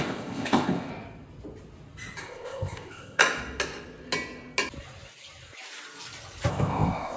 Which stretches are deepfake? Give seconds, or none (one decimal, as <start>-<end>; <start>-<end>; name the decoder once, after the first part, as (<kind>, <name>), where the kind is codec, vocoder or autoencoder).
0.0-0.9 (codec, ZipCodec); 2.2-3.2; 6.5-7.2